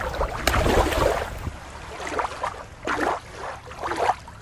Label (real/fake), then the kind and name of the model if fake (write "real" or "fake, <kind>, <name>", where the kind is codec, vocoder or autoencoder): real